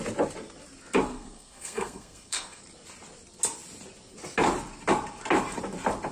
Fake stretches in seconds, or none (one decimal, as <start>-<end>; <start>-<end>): 1.1-2.6